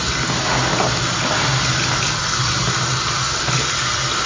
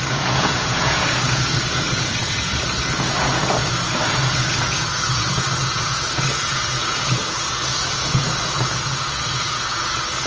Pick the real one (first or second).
first